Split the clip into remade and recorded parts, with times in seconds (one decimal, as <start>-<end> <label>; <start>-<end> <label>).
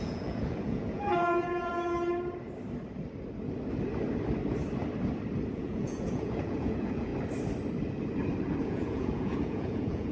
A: 0.0-1.7 remade; 1.7-5.5 recorded; 5.5-7.1 remade; 7.1-8.6 recorded; 8.6-10.1 remade